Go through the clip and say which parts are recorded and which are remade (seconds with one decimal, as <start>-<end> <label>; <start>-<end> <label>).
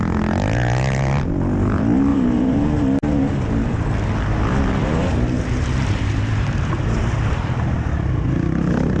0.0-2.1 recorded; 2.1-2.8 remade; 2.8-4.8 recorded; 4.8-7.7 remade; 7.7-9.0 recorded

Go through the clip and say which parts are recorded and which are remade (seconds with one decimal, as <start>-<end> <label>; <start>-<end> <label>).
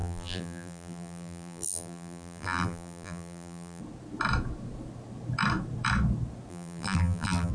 0.0-3.8 remade; 3.8-6.5 recorded; 6.5-7.5 remade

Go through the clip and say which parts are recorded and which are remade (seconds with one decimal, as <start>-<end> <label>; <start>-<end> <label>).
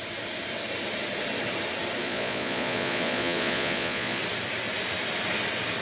0.0-2.0 recorded; 2.0-4.2 remade; 4.2-5.8 recorded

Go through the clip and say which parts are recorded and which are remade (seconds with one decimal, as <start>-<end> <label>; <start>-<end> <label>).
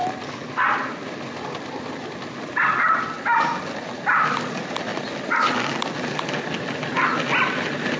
0.0-8.0 recorded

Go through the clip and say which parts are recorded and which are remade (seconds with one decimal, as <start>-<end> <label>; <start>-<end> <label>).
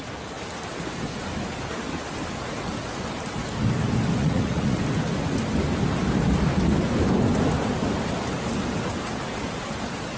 0.0-4.2 recorded; 4.2-4.8 remade; 4.8-10.2 recorded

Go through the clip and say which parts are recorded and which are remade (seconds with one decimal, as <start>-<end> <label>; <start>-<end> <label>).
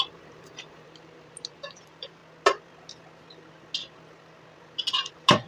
0.0-2.2 remade; 2.2-5.1 recorded; 5.1-5.5 remade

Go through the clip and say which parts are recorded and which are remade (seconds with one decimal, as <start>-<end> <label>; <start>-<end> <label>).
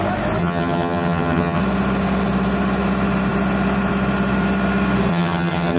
0.0-0.4 recorded; 0.4-1.6 remade; 1.6-5.1 recorded; 5.1-5.8 remade